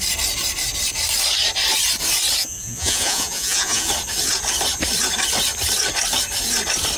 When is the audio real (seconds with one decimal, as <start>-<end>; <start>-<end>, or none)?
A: 0.0-2.4; 3.9-7.0